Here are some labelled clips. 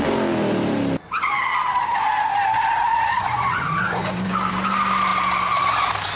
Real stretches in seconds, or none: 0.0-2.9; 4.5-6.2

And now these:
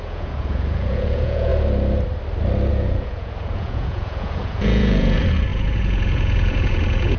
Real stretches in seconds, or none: 1.5-2.7

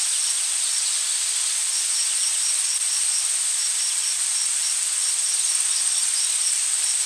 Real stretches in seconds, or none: 0.0-7.1